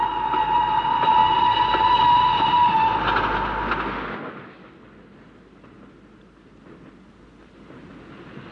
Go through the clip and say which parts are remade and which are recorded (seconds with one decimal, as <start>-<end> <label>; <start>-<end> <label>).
0.0-8.5 recorded